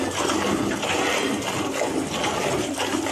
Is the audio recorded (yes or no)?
yes